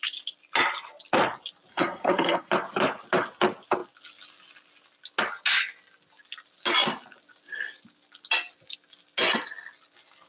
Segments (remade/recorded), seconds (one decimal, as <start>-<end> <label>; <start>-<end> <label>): 0.0-1.7 recorded; 1.7-2.5 remade; 2.5-10.3 recorded